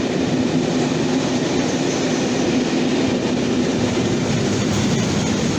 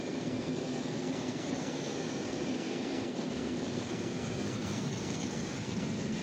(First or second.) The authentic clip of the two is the first